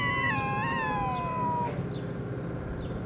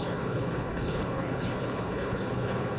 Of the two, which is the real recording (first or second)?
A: first